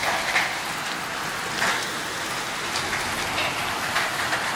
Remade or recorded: recorded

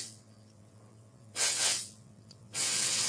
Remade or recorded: remade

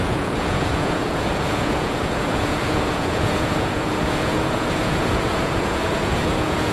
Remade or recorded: remade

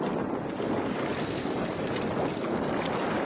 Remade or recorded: recorded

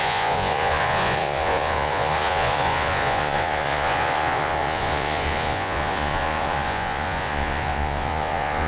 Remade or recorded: remade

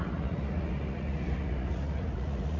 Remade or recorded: remade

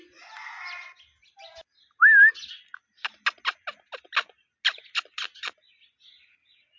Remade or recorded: recorded